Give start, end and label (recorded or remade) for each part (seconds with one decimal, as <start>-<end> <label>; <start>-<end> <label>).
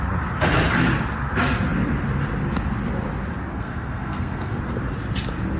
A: 0.0-3.5 recorded; 3.5-4.6 remade; 4.6-5.6 recorded